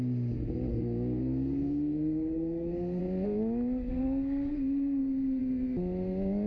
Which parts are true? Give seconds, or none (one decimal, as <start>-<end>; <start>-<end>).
0.0-0.7; 3.0-3.9; 5.4-6.5